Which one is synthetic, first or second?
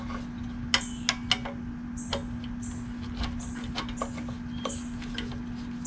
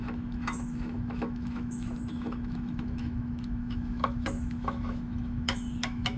second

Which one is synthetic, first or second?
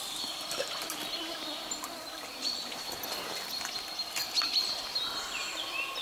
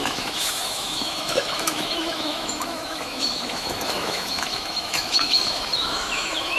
second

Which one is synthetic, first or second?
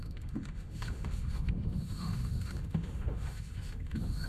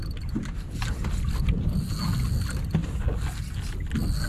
first